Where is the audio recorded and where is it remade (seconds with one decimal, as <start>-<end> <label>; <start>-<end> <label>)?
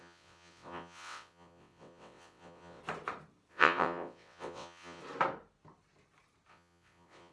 0.0-2.8 remade; 2.8-3.5 recorded; 3.5-5.0 remade; 5.0-6.5 recorded; 6.5-7.3 remade